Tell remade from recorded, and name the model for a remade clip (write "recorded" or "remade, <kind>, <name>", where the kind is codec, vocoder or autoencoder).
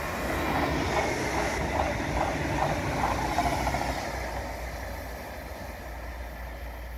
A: recorded